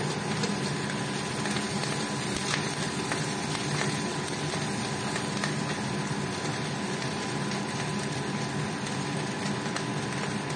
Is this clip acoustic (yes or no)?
yes